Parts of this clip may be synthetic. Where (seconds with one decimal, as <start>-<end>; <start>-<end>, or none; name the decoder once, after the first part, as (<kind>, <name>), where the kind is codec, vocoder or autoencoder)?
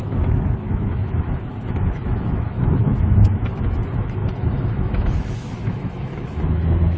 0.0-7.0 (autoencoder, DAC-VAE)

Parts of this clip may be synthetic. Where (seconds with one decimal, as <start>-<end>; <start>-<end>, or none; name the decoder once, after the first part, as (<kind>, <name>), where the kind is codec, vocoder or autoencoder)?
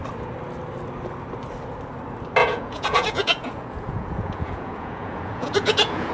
2.4-6.1 (vocoder, Vocos)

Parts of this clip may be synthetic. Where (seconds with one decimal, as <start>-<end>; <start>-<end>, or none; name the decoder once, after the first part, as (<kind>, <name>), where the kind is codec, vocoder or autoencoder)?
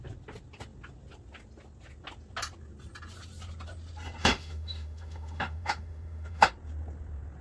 4.2-6.5 (autoencoder, DAC-VAE)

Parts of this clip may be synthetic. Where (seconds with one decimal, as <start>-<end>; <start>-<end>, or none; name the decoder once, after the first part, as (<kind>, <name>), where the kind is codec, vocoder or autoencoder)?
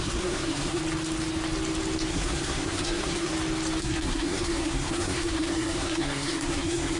0.0-0.8 (codec, SNAC); 2.1-3.3; 3.8-7.0